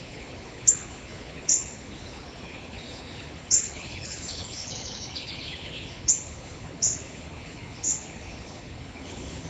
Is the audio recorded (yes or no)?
no